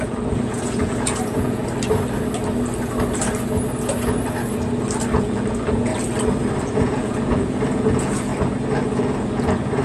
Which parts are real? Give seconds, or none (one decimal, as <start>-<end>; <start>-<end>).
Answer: 1.6-5.1; 5.9-6.6; 8.3-8.9